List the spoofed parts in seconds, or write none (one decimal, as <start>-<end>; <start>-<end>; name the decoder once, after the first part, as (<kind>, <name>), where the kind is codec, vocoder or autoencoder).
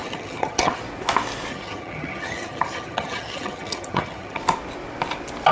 0.0-0.8 (vocoder, HiFi-GAN); 1.5-4.4